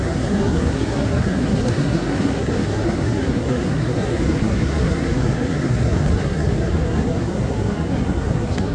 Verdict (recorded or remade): remade